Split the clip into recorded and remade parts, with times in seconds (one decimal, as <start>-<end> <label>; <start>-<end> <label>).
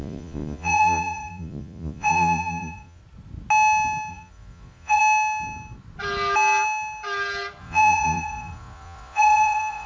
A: 0.0-3.0 remade; 3.0-4.1 recorded; 4.1-5.0 remade; 5.0-7.6 recorded; 7.6-9.9 remade